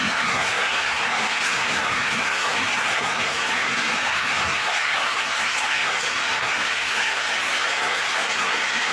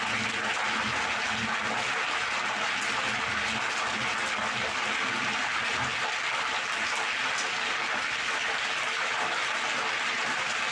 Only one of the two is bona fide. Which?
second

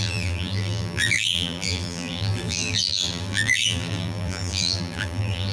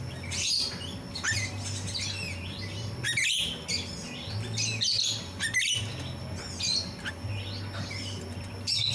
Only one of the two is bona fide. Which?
second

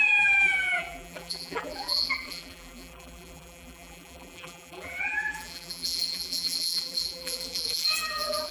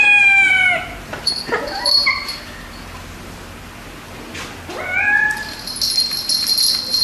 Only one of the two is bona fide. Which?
second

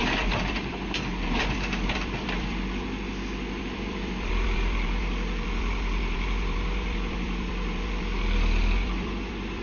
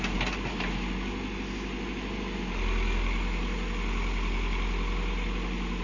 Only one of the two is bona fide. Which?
second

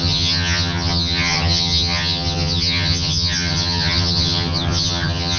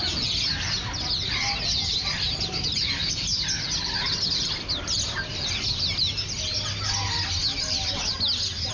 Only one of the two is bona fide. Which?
second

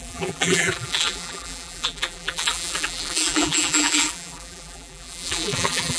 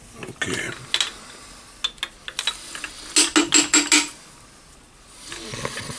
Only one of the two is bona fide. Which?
second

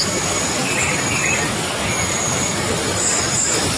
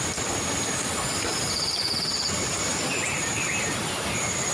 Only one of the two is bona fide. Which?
second